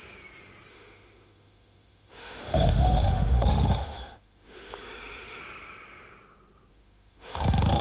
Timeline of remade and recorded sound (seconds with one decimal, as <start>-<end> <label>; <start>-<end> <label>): 0.0-0.7 recorded; 0.7-5.4 remade; 5.4-6.7 recorded; 6.7-7.8 remade